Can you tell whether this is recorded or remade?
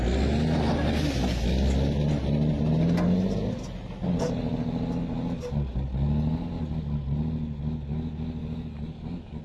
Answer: recorded